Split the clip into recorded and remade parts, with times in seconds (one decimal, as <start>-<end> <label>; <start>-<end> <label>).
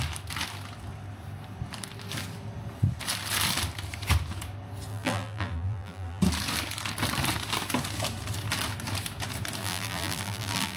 0.0-4.9 recorded; 4.9-6.2 remade; 6.2-9.6 recorded; 9.6-10.8 remade